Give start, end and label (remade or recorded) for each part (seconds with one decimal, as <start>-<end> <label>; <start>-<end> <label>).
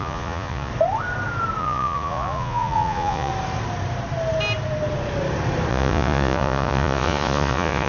0.0-0.7 remade; 0.7-1.6 recorded; 1.6-3.3 remade; 3.3-5.7 recorded; 5.7-7.9 remade